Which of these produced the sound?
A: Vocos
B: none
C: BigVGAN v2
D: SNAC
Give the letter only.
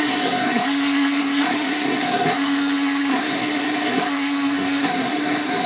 D